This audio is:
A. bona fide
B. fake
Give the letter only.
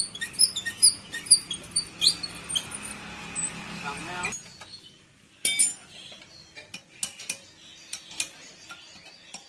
A